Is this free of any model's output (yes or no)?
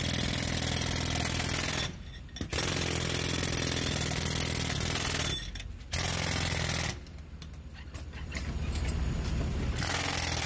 yes